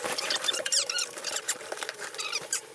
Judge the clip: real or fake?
fake